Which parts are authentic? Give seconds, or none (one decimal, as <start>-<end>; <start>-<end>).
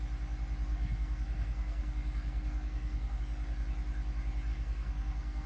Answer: 0.0-0.7; 3.2-4.5